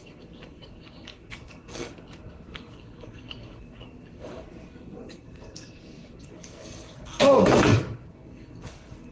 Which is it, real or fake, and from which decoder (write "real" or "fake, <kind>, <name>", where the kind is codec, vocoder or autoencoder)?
fake, codec, SNAC